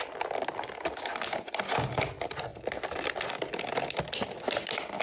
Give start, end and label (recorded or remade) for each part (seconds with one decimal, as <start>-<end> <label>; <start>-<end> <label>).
0.0-2.5 recorded; 2.5-3.6 remade; 3.6-5.0 recorded